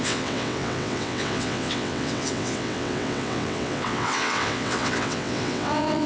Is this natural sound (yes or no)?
no